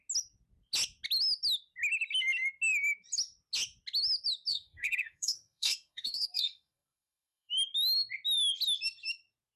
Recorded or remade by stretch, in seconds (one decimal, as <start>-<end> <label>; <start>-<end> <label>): 0.0-4.5 recorded; 4.5-7.5 remade; 7.5-9.6 recorded